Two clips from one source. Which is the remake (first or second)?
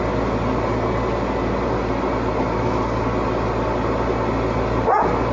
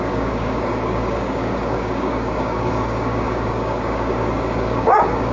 second